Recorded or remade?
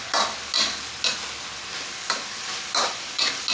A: recorded